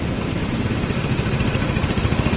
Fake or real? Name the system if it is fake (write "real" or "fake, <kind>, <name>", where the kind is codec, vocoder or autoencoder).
real